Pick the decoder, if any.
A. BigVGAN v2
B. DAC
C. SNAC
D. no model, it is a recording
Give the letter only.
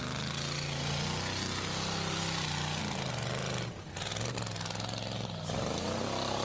D